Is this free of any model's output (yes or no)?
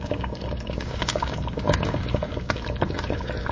no